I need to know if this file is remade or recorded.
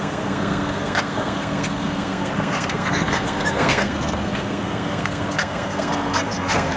remade